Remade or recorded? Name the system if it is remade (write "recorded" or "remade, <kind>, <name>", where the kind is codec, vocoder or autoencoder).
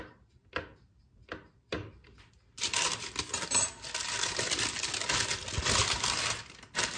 recorded